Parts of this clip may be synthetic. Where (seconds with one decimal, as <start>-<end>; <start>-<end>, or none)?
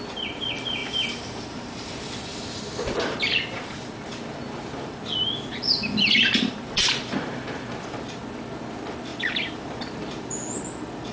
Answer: 0.8-5.0; 5.5-8.2; 9.1-10.6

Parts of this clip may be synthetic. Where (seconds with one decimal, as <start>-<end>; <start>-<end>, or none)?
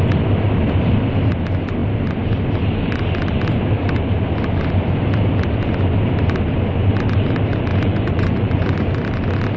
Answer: 7.7-8.9